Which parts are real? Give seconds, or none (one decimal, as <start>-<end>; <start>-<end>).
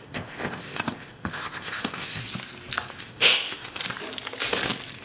2.2-3.0; 3.8-5.0